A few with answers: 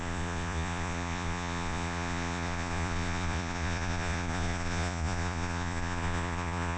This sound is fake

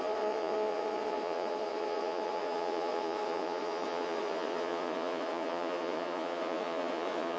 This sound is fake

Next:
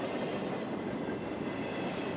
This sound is real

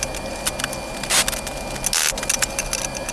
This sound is real